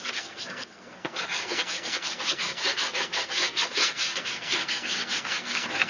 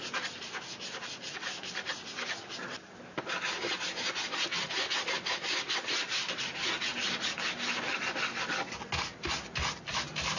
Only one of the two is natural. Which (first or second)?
second